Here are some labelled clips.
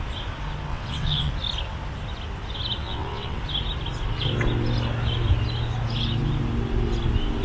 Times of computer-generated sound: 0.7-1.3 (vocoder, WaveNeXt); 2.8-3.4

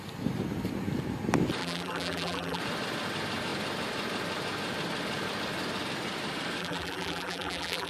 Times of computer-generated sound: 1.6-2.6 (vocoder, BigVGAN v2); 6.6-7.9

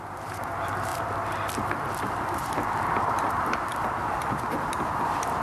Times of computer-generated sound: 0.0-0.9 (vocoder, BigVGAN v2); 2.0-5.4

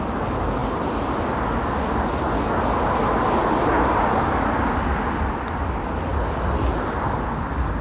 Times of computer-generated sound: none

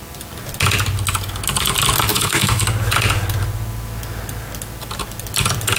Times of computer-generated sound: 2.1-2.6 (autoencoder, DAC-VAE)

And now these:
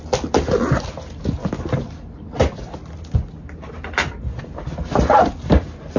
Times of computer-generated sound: none